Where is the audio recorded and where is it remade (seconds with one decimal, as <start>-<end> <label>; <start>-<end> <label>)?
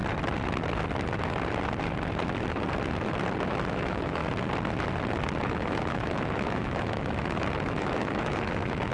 0.0-3.7 recorded; 3.7-4.2 remade; 4.2-5.5 recorded; 5.5-8.9 remade